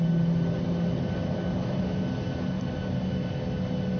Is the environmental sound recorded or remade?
recorded